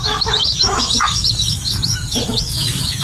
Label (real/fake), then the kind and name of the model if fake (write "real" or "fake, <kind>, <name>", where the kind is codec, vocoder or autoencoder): fake, autoencoder, DAC-VAE